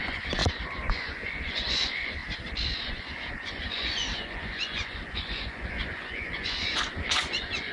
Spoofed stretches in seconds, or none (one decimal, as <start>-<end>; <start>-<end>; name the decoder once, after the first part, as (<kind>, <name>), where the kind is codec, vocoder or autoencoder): 0.0-0.4 (vocoder, Vocos); 0.9-2.2; 2.8-7.7